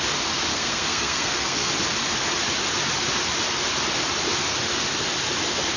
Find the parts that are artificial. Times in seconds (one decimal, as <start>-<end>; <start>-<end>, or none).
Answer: 0.5-1.7